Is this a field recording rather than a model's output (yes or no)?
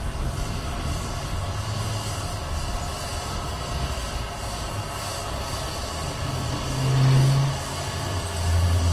yes